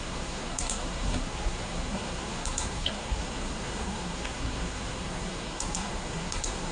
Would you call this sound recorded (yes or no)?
no